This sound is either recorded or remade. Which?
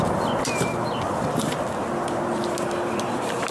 recorded